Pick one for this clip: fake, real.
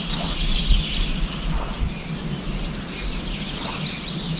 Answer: real